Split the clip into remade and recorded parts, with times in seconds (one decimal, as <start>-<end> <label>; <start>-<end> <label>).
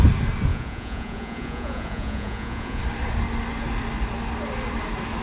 0.0-0.5 recorded; 0.5-2.8 remade; 2.8-5.2 recorded